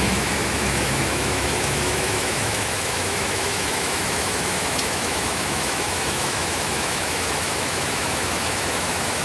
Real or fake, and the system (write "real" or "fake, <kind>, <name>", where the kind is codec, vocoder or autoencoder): fake, autoencoder, DAC-VAE